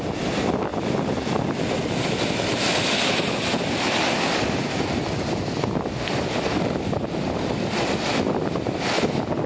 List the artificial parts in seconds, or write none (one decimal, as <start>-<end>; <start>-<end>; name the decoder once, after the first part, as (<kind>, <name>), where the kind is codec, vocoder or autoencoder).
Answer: none